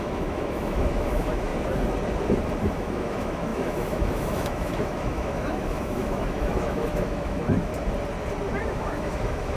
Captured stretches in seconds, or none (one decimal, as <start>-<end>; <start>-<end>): 1.5-2.7; 7.7-8.7